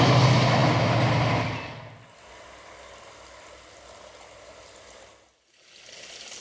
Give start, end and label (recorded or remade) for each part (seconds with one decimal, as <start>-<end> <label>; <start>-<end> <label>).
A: 0.0-6.4 recorded